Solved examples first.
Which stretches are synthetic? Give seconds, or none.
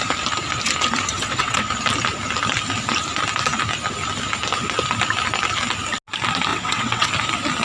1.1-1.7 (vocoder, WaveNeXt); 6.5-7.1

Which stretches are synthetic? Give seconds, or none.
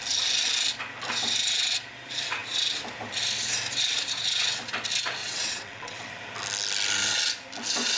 5.2-6.1 (vocoder, WaveNeXt)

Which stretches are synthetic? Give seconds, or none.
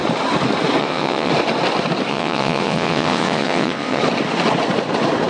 0.8-1.3 (vocoder, WaveNeXt); 2.1-4.0